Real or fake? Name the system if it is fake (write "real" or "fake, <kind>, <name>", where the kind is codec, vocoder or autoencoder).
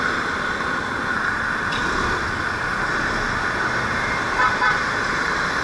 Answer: real